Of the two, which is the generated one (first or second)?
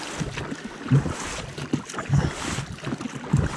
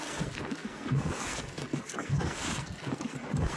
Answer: second